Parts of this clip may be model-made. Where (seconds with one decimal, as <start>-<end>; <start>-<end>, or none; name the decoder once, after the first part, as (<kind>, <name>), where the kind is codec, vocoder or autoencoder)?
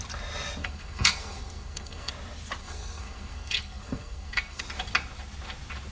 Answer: 0.6-2.1 (codec, SNAC); 2.6-4.6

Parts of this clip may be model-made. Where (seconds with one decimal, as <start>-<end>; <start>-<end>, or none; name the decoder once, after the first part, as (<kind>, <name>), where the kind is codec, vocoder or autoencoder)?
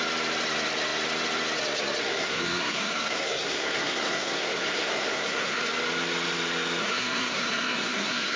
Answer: 2.0-5.6 (codec, SNAC); 6.8-8.4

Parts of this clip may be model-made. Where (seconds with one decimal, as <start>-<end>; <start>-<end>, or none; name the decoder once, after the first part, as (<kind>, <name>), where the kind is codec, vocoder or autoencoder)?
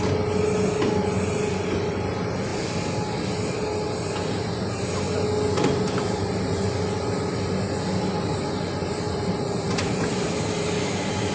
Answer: none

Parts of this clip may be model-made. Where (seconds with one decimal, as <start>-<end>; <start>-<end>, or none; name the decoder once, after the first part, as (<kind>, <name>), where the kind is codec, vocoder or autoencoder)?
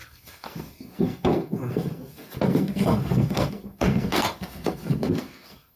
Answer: 0.0-5.8 (codec, SNAC)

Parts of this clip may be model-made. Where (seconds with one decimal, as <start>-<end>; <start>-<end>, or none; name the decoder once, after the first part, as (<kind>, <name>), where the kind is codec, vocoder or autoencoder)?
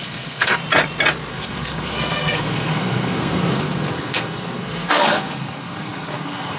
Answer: 0.0-0.6 (codec, SNAC); 1.3-6.6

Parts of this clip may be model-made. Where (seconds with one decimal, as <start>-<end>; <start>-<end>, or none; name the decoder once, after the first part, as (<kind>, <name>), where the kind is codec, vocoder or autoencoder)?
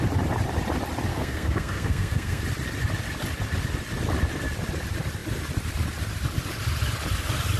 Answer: 1.1-2.4 (codec, SNAC)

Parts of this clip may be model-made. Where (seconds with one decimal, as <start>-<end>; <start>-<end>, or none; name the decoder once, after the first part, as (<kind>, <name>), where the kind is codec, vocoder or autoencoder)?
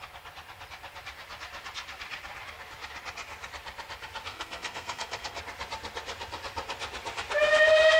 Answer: 4.3-5.4 (codec, SNAC)